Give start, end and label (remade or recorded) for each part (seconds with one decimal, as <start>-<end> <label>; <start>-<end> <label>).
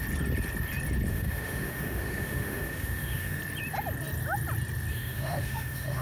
0.0-1.1 recorded; 1.1-3.4 remade; 3.4-4.9 recorded; 4.9-6.0 remade